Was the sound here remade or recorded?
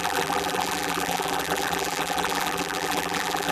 remade